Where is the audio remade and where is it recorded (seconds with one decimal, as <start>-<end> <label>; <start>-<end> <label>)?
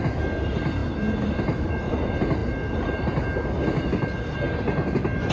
0.0-5.3 recorded